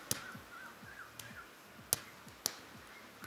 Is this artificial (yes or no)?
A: no